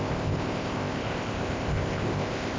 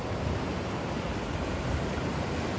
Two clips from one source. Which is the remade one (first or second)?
first